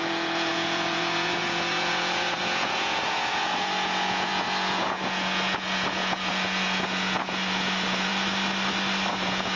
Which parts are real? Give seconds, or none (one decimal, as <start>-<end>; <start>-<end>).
8.1-9.1